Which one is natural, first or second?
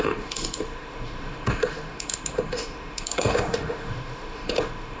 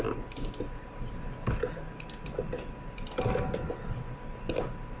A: second